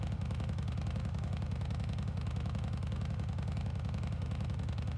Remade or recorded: remade